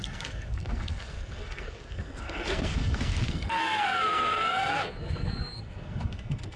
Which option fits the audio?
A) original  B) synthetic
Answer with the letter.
B